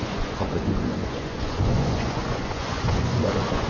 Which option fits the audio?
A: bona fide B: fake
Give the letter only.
B